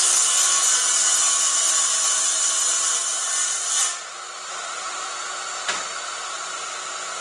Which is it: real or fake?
real